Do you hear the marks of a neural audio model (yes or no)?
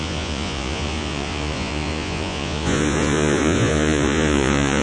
yes